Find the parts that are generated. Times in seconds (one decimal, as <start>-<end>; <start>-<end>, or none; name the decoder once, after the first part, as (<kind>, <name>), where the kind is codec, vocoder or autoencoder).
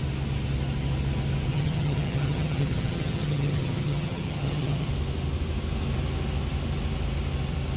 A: 1.5-4.9 (vocoder, HiFi-GAN)